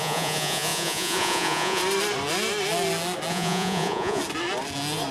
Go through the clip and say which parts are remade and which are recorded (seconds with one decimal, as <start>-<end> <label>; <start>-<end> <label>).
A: 0.0-1.8 remade; 1.8-3.3 recorded; 3.3-4.2 remade; 4.2-5.1 recorded